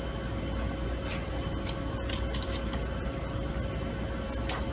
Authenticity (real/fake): real